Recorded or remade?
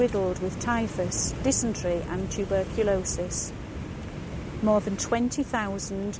recorded